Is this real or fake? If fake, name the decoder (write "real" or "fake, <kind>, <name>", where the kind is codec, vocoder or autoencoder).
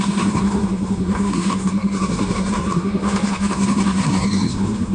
fake, codec, SNAC